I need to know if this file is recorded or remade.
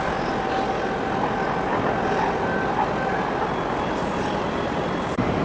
recorded